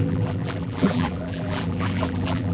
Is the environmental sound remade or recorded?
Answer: remade